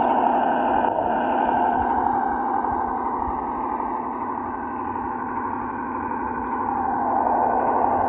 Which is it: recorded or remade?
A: recorded